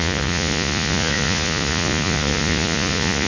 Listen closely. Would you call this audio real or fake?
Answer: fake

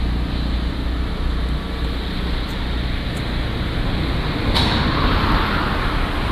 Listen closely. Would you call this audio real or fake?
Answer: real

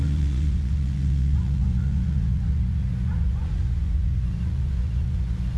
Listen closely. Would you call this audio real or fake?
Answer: fake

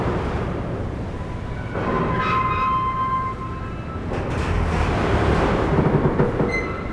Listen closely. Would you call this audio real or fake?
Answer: real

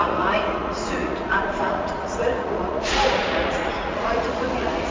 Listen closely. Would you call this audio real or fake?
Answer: fake